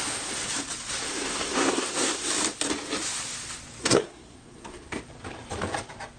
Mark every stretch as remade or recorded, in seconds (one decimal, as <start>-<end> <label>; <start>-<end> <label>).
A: 0.0-1.1 recorded; 1.1-2.3 remade; 2.3-3.8 recorded; 3.8-5.0 remade; 5.0-6.2 recorded